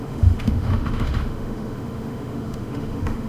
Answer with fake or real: fake